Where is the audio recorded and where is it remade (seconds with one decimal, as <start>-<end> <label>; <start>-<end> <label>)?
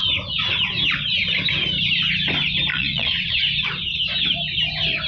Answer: 0.0-2.7 recorded; 2.7-3.4 remade; 3.4-5.1 recorded